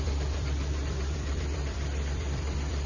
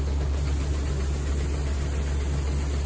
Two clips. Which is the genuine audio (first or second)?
second